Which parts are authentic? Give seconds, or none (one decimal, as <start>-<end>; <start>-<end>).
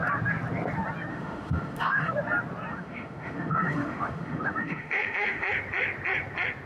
0.0-1.1; 2.1-2.7; 5.5-6.7